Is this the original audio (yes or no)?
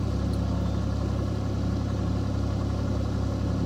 yes